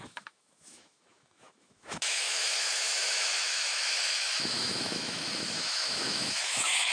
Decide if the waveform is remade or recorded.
remade